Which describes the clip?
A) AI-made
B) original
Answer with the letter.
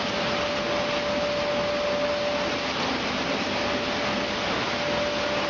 B